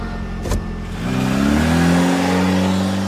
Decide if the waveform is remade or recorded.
recorded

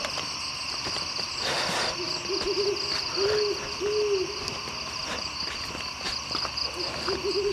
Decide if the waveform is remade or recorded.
recorded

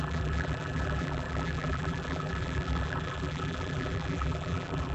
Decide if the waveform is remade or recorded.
remade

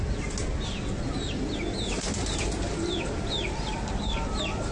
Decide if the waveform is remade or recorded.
recorded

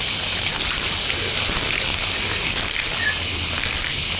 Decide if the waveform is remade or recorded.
recorded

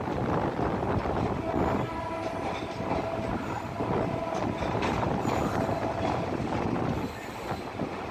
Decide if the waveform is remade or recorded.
recorded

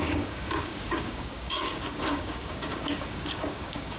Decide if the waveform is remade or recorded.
remade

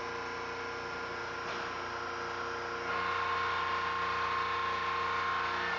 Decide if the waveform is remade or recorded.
recorded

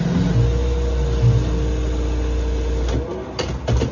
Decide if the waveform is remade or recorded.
recorded